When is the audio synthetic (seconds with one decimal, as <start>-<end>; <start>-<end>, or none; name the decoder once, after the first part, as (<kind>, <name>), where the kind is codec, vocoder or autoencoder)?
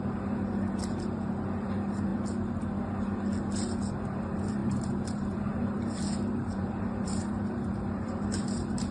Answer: 0.0-2.1 (vocoder, BigVGAN v2); 3.9-8.9